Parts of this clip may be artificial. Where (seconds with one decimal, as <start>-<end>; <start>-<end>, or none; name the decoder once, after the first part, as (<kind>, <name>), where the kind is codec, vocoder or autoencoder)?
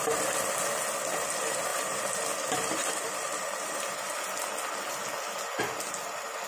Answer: none